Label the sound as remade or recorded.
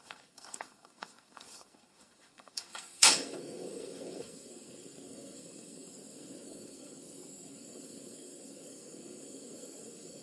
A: remade